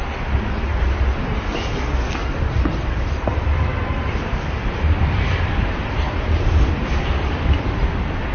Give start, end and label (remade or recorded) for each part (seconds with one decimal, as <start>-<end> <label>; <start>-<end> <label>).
0.0-0.7 recorded; 0.7-1.4 remade; 1.4-2.2 recorded; 2.2-7.0 remade; 7.0-8.3 recorded